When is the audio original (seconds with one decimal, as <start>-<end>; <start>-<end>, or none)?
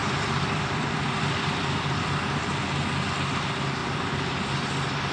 2.6-3.8; 4.3-5.1